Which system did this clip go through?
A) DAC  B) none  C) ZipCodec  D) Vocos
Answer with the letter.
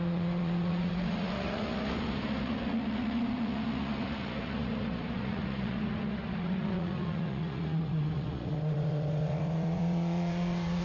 D